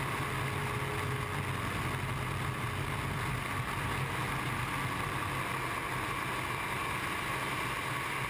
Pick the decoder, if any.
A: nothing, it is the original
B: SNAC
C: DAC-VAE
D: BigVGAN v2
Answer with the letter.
A